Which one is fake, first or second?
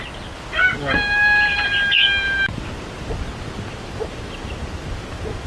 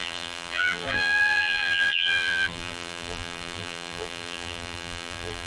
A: second